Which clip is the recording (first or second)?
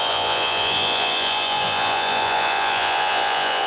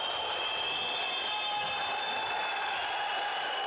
second